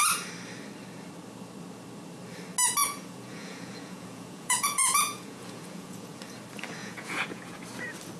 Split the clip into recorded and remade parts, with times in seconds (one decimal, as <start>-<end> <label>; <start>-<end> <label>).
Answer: 0.0-2.8 recorded; 2.8-6.2 remade; 6.2-6.8 recorded; 6.8-7.6 remade; 7.6-8.2 recorded